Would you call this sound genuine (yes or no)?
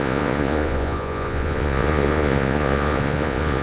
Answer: no